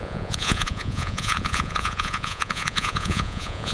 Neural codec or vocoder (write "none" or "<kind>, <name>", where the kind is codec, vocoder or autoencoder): vocoder, Vocos